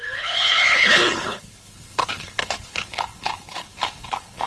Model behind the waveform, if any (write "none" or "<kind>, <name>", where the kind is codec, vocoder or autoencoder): codec, HILCodec